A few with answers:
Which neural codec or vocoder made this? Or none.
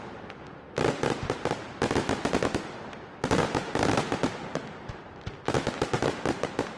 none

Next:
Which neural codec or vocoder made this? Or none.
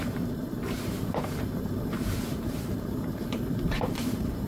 vocoder, BigVGAN v2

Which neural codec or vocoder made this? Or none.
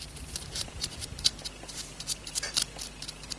vocoder, BigVGAN v2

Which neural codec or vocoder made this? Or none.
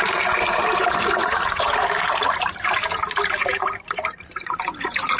vocoder, BigVGAN v2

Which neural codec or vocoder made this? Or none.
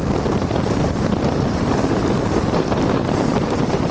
none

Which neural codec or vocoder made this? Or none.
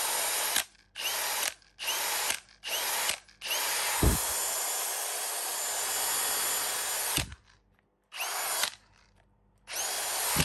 none